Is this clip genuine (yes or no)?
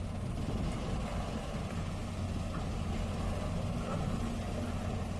yes